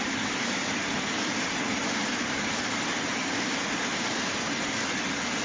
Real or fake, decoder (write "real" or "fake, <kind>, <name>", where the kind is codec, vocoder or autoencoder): real